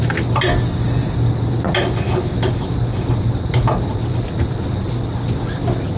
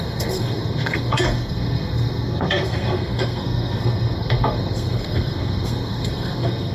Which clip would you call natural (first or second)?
first